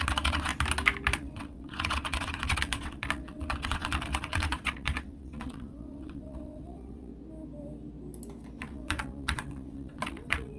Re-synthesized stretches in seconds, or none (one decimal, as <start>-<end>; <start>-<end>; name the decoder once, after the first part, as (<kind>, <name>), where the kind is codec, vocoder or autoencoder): 0.0-0.5 (vocoder, WaveNeXt); 1.1-7.1; 8.6-10.6